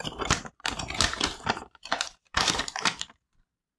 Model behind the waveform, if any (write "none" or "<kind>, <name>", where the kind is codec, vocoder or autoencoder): vocoder, BigVGAN v2